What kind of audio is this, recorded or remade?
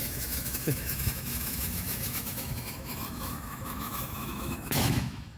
remade